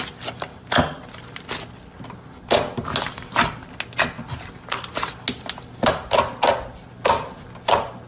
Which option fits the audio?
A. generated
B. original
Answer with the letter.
B